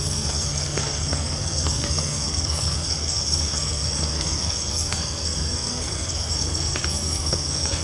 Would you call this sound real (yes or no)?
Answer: no